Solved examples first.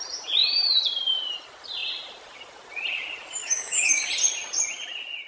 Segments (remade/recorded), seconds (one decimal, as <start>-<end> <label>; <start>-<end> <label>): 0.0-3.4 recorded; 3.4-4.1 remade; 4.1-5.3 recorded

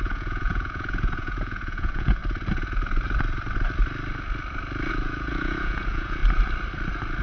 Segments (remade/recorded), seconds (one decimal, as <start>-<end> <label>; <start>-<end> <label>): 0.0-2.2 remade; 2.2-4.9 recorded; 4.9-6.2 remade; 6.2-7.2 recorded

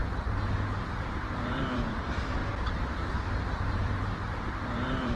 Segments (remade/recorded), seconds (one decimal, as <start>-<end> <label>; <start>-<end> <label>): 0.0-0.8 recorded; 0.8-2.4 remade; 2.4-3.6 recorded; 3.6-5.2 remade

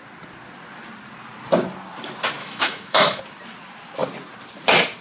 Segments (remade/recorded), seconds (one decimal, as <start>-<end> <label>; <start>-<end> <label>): 0.0-2.4 recorded; 2.4-3.2 remade; 3.2-5.0 recorded